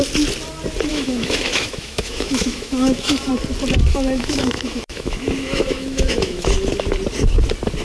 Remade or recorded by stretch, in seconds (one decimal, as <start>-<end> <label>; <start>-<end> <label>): 0.0-0.9 recorded; 0.9-3.3 remade; 3.3-3.9 recorded; 3.9-6.5 remade; 6.5-7.8 recorded